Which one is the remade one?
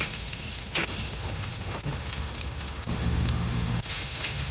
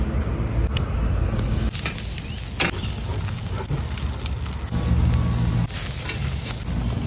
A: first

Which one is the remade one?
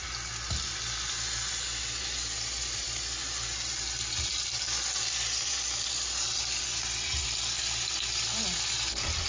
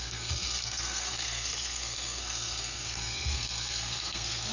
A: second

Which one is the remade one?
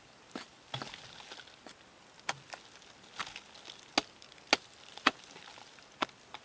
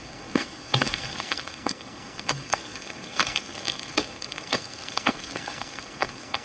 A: second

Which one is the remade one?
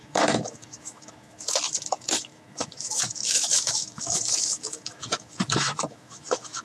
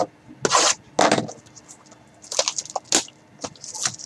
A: first